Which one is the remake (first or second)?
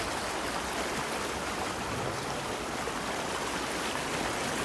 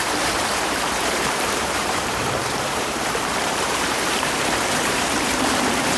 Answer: second